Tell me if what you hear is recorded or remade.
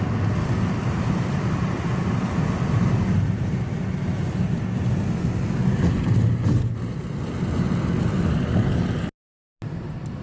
recorded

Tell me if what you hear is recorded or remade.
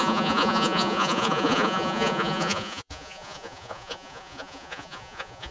remade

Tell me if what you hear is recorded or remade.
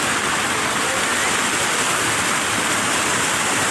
recorded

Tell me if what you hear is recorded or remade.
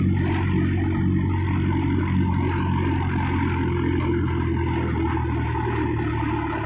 recorded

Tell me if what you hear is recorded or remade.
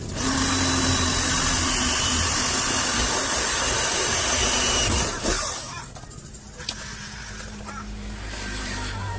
recorded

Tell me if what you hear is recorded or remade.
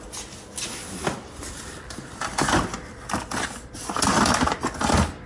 recorded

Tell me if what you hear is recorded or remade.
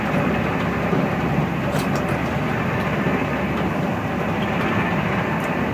recorded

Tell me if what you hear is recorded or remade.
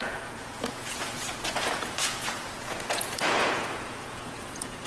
remade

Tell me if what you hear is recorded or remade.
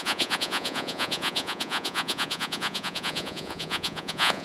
remade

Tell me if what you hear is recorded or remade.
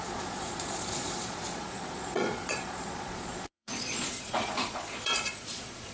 remade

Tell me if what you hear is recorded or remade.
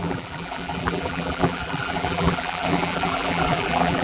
remade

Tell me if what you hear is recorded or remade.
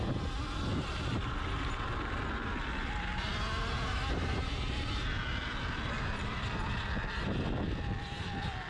recorded